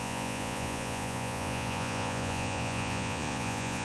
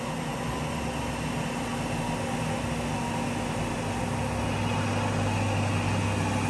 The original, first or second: second